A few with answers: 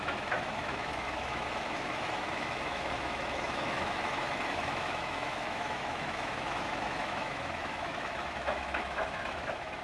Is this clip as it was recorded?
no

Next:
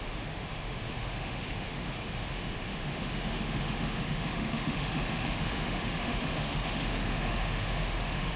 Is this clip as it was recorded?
no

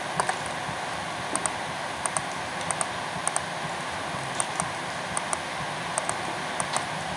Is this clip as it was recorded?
yes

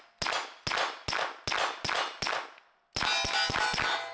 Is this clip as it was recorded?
yes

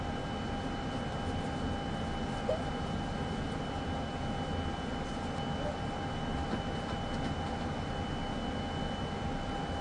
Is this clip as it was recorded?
yes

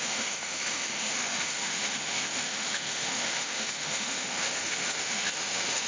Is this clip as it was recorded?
no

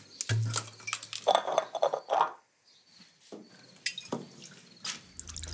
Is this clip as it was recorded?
yes